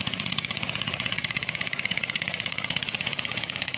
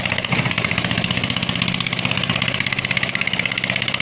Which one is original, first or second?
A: second